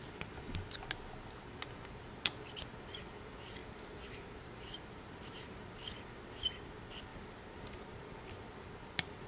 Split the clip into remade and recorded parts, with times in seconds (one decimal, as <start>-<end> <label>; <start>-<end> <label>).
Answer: 0.0-3.6 recorded; 3.6-5.6 remade; 5.6-7.1 recorded; 7.1-8.1 remade; 8.1-9.3 recorded